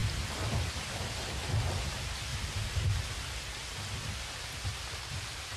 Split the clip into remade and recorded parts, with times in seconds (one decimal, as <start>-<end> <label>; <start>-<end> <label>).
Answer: 0.0-5.6 recorded